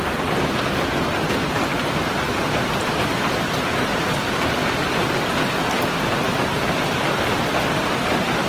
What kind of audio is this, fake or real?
real